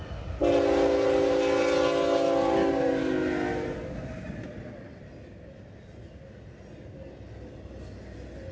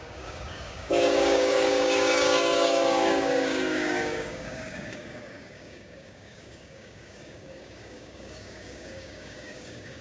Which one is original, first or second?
first